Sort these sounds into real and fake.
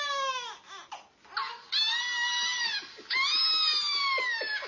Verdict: real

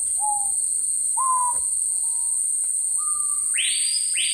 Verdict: real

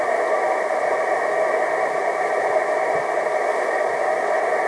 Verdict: real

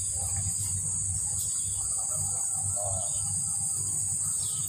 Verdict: real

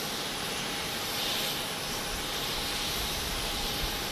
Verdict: fake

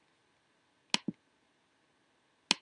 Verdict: real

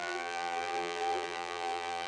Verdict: fake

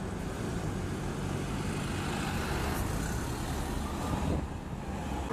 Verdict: real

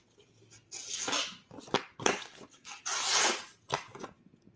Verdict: real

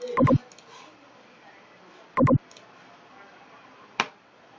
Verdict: real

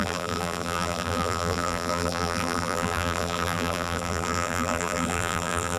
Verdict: fake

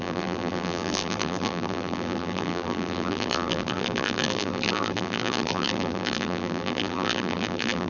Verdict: fake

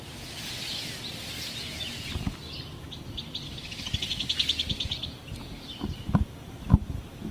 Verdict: real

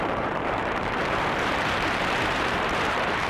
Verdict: fake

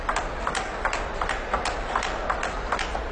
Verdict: real